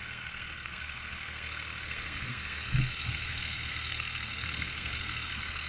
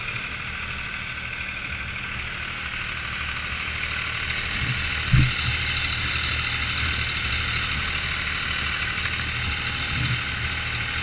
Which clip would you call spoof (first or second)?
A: first